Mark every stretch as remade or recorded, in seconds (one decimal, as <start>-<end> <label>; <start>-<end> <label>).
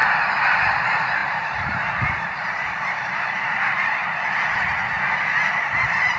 0.0-0.7 recorded; 0.7-4.0 remade; 4.0-5.5 recorded; 5.5-6.2 remade